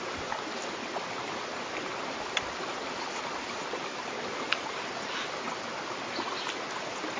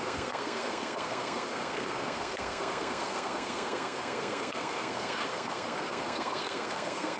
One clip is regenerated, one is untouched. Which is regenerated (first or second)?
second